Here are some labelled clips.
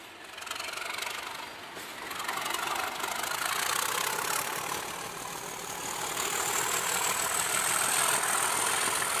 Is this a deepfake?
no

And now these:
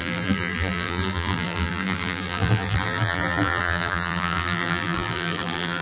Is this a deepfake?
yes